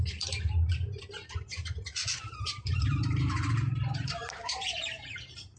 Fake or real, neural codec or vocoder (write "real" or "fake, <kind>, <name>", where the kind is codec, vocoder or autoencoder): fake, vocoder, BigVGAN v2